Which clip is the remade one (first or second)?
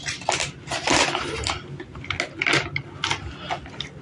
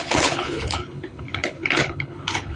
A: second